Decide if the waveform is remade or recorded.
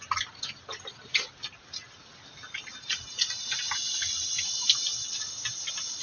recorded